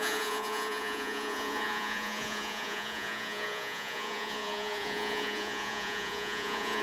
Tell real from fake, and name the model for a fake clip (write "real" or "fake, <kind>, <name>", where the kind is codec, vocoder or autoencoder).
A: fake, vocoder, Vocos